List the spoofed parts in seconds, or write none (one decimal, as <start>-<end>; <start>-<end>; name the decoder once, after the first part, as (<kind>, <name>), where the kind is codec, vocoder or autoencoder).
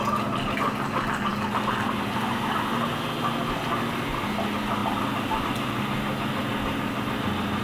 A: none